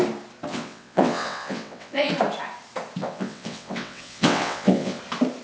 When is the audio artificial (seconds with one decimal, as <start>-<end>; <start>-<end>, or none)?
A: 0.5-2.1; 3.0-5.0